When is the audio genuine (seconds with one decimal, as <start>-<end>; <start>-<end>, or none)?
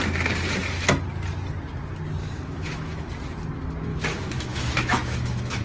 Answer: 0.0-2.2; 3.1-3.9